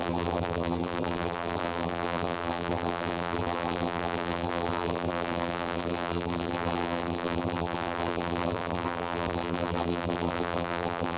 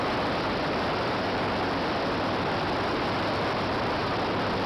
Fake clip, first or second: first